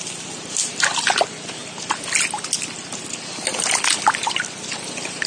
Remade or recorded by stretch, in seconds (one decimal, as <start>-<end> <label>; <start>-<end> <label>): 0.0-5.3 recorded